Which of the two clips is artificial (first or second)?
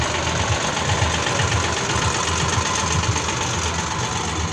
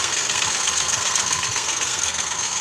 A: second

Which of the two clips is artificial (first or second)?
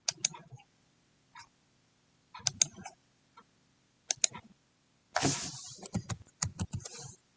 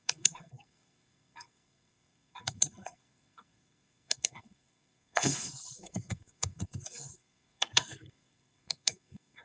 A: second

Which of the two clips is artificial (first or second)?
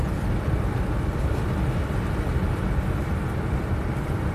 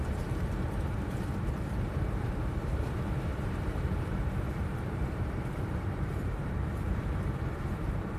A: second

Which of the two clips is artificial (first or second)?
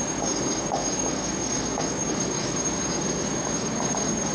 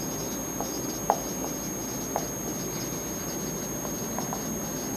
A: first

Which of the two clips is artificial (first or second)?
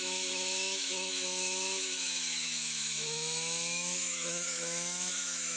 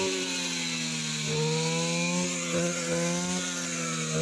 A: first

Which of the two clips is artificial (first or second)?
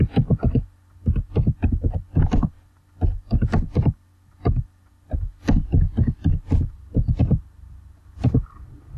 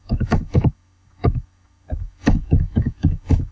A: second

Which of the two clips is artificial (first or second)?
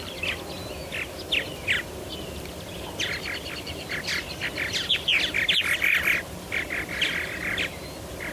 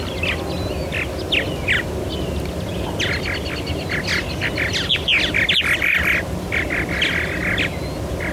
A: first